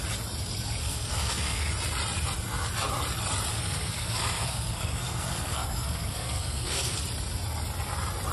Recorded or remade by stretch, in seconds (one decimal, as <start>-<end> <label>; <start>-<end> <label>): 0.0-0.8 recorded; 0.8-1.7 remade; 1.7-3.5 recorded; 3.5-7.0 remade; 7.0-8.3 recorded